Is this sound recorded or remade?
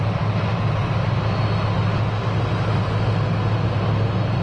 recorded